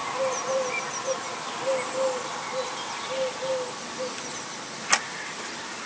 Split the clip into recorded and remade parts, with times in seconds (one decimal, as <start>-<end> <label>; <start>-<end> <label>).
0.0-5.9 recorded